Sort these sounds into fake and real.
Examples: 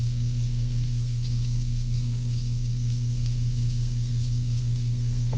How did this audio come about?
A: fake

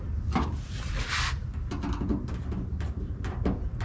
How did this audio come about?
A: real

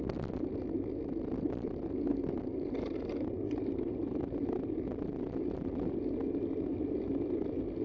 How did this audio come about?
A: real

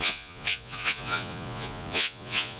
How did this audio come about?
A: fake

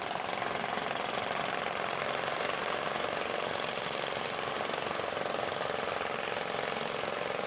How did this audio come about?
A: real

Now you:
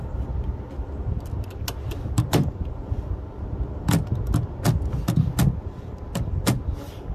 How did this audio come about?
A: real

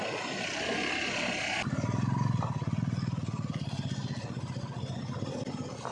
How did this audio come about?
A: real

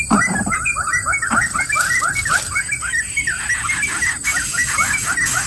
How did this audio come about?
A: real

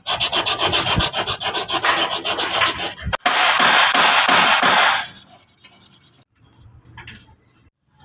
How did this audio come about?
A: real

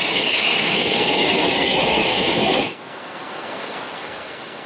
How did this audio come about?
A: fake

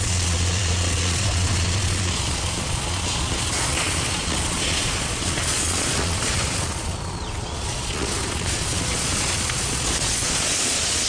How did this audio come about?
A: fake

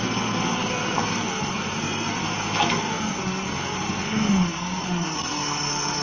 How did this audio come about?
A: fake